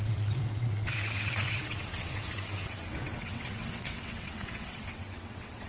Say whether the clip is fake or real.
fake